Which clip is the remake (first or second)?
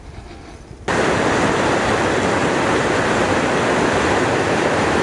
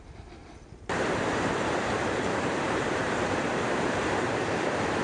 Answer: second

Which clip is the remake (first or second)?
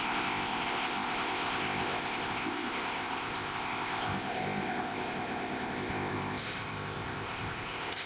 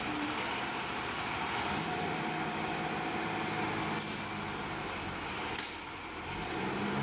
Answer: first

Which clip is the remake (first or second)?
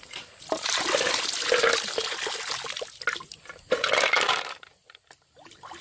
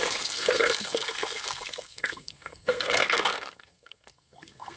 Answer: second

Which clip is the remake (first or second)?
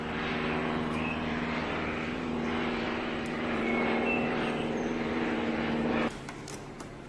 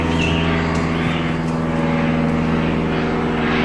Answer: first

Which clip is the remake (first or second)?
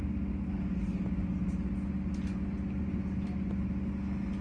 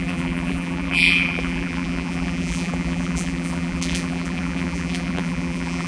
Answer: second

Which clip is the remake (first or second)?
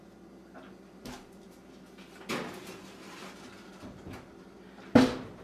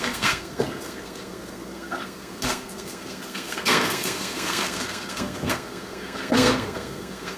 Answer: second